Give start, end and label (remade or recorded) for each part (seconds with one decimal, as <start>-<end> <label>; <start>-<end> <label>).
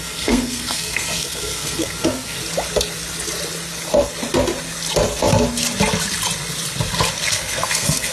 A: 0.0-2.4 remade; 2.4-7.3 recorded; 7.3-8.1 remade